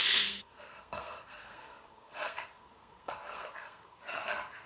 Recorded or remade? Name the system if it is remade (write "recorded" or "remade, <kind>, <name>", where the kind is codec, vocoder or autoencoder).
remade, codec, SNAC